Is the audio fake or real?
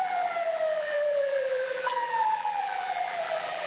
fake